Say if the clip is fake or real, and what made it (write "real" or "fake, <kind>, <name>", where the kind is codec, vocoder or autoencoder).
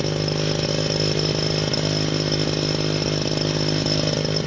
real